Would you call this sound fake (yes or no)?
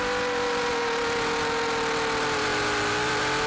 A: no